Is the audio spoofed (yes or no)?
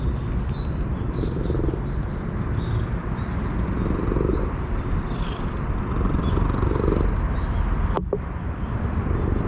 no